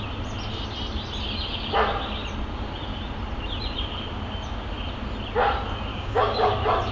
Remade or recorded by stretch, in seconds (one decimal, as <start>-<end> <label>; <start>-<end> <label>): 0.0-5.9 recorded; 5.9-6.5 remade; 6.5-6.9 recorded